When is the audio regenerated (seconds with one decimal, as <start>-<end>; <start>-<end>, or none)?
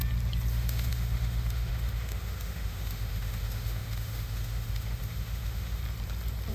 0.5-5.8